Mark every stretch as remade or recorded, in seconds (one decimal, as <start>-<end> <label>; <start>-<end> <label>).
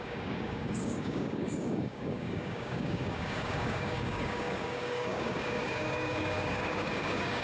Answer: 0.0-7.4 remade